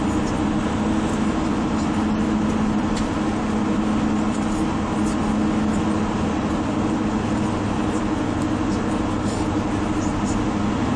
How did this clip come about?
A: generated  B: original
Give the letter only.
B